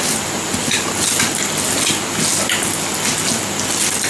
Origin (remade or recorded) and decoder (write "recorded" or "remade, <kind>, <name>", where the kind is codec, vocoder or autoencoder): recorded